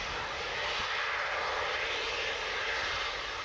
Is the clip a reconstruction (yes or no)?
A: no